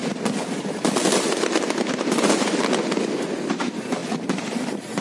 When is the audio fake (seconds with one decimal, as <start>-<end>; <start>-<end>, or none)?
3.0-4.0